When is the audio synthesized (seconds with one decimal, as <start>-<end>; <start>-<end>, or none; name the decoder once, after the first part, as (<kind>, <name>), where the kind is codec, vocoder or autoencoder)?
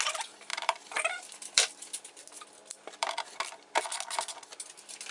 0.5-2.2 (vocoder, BigVGAN v2); 2.6-3.1